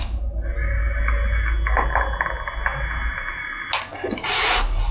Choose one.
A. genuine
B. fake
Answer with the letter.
A